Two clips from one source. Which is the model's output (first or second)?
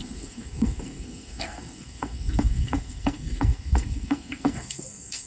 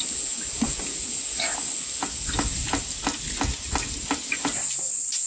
first